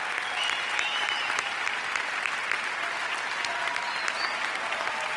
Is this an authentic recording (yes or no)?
yes